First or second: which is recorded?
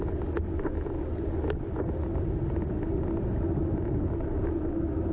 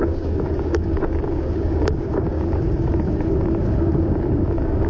first